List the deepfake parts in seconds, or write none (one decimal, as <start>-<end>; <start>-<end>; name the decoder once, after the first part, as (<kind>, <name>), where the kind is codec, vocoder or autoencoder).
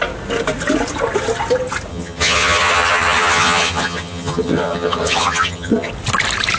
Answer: 1.9-5.9 (vocoder, HiFi-GAN)